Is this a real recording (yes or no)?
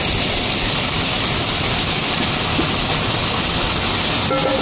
yes